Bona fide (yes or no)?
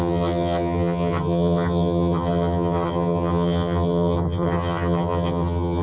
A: no